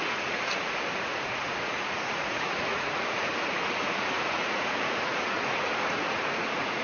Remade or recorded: remade